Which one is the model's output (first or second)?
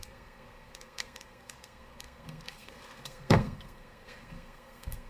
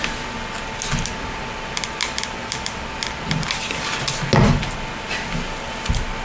first